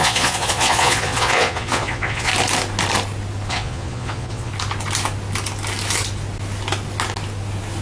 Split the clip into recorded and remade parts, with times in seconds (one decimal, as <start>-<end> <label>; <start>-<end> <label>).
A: 0.0-2.3 remade; 2.3-3.5 recorded; 3.5-4.5 remade; 4.5-7.8 recorded